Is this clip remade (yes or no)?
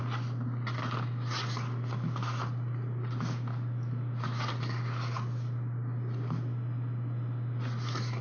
no